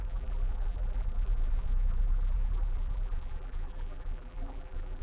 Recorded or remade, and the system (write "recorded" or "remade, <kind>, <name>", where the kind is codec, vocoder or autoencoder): remade, vocoder, BigVGAN v2